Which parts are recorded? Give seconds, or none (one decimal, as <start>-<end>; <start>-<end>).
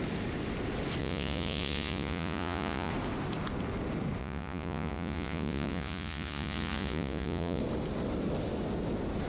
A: 0.0-1.0; 2.9-4.2; 7.6-9.3